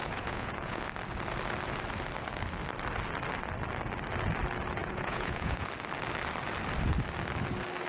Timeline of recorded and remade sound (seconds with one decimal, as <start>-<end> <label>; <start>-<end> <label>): 0.0-0.8 remade; 0.8-4.8 recorded; 4.8-5.7 remade; 5.7-7.9 recorded